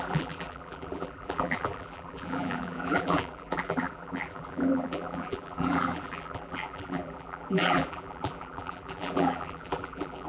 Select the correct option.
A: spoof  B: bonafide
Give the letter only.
A